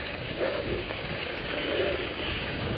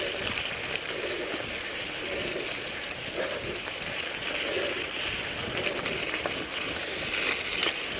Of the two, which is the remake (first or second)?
first